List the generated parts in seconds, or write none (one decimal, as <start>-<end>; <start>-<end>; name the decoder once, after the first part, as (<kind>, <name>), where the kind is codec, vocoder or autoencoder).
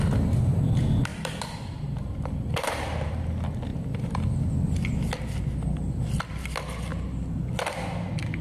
1.1-3.1 (vocoder, BigVGAN v2); 3.7-4.5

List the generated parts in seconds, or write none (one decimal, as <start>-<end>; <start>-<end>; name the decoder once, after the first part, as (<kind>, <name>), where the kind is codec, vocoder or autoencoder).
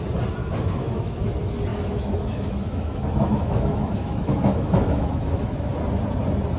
0.4-1.2 (autoencoder, DAC-VAE); 1.7-5.7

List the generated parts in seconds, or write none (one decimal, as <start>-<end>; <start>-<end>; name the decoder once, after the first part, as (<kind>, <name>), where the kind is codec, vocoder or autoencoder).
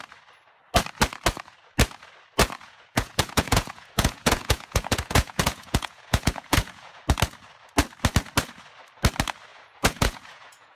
2.6-7.0 (vocoder, Vocos); 9.5-10.8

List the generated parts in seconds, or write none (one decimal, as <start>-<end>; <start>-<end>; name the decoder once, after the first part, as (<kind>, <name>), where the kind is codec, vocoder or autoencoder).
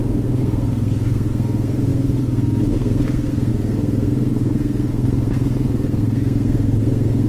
0.0-7.3 (codec, SNAC)